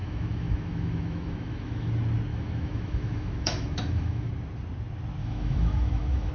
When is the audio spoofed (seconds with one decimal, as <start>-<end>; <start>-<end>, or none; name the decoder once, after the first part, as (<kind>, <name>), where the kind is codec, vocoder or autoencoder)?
0.0-1.9 (autoencoder, DAC-VAE); 2.3-4.3; 5.2-6.3